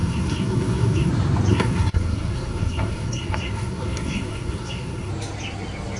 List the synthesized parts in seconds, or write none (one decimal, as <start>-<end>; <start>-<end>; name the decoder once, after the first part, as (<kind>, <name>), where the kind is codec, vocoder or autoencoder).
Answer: 0.0-1.1 (codec, SNAC); 1.5-5.1